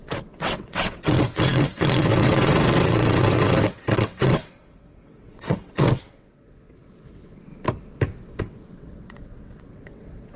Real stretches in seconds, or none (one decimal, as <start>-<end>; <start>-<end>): 7.5-8.4